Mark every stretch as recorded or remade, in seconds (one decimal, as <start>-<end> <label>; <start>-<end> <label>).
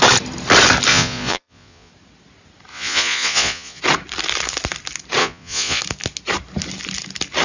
0.0-0.9 recorded; 0.9-1.9 remade; 1.9-2.7 recorded; 2.7-3.8 remade; 3.8-5.2 recorded; 5.2-5.8 remade; 5.8-7.4 recorded